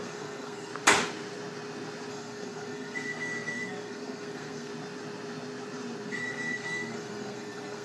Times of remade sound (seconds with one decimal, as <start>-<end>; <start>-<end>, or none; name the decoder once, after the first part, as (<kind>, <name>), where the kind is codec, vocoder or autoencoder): 0.0-0.7 (codec, SNAC); 2.1-4.7; 6.1-7.8